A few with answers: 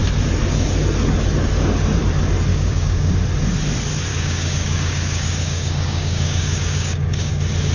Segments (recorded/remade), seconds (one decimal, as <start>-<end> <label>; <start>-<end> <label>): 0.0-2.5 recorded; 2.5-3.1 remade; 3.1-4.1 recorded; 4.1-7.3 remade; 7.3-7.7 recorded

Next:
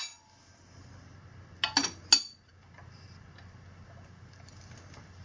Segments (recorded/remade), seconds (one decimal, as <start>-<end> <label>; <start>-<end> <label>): 0.0-5.2 recorded

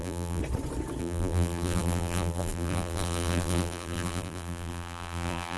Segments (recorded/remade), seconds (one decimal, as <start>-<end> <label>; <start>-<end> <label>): 0.0-0.4 remade; 0.4-1.0 recorded; 1.0-5.6 remade

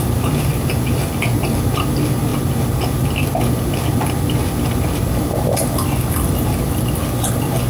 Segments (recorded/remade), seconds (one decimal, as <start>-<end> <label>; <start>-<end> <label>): 0.0-7.7 recorded